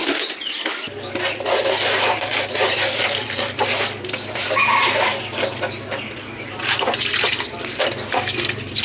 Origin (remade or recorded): recorded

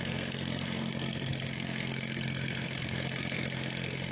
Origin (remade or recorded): remade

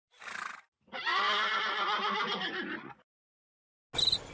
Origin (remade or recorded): recorded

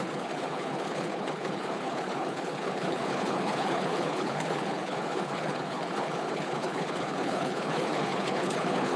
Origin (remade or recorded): remade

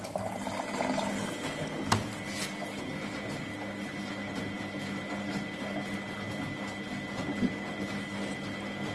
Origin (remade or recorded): recorded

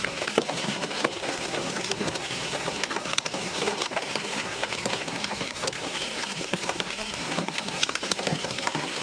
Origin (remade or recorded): remade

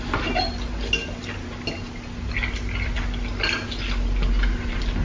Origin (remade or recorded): recorded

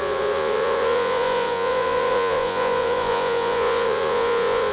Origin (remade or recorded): remade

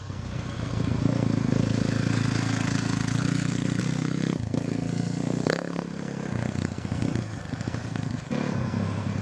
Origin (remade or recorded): remade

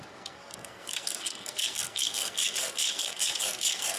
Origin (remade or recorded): remade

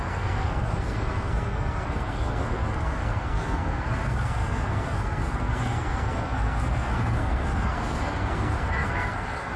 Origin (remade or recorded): remade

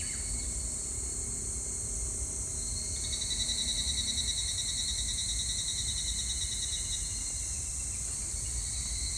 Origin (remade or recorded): recorded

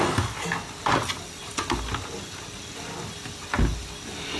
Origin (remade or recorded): recorded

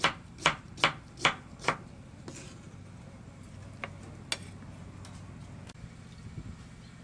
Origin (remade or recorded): recorded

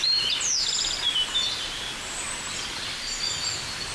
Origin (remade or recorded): recorded